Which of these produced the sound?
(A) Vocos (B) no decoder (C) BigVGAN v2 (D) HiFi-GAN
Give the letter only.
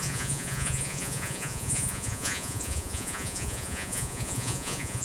A